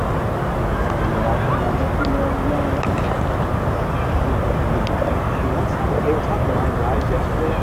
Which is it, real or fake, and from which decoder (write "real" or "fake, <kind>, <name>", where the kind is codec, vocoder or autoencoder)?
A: real